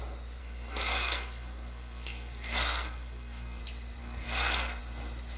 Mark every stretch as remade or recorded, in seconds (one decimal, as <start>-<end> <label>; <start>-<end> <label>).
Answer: 0.0-0.4 recorded; 0.4-3.6 remade; 3.6-4.0 recorded; 4.0-4.8 remade; 4.8-5.4 recorded